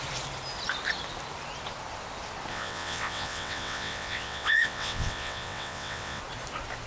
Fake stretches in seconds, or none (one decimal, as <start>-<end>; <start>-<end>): 2.5-6.2